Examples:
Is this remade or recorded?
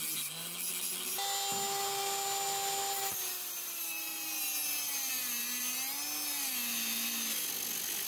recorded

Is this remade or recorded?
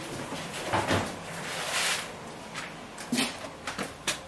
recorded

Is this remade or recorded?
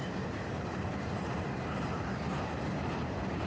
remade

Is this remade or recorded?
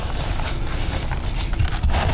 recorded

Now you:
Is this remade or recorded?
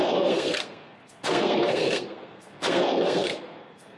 remade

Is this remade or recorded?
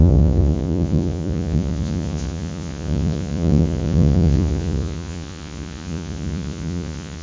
remade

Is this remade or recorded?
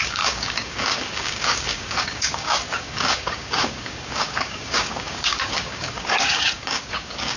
remade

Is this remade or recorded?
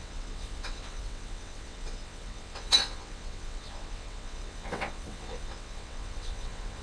remade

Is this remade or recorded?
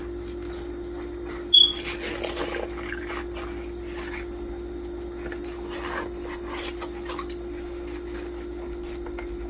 recorded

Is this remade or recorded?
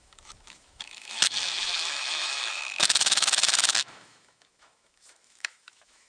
remade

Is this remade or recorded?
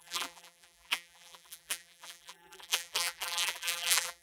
remade